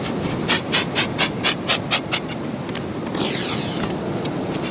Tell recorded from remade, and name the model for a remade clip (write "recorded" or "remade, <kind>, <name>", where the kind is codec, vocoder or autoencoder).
recorded